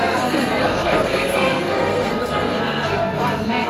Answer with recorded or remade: remade